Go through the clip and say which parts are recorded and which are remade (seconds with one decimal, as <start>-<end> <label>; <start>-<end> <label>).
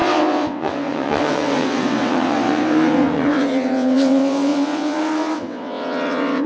0.0-6.5 remade